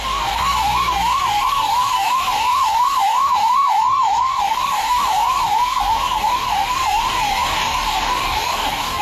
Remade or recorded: remade